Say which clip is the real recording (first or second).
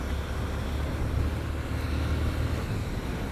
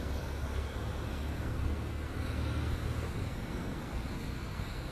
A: first